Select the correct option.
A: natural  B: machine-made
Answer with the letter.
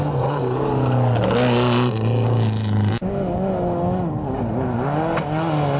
A